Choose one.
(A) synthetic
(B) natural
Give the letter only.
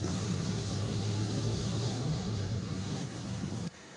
A